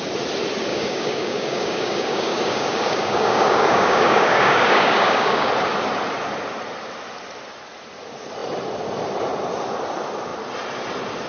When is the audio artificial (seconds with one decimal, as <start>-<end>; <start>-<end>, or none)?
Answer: 0.7-5.5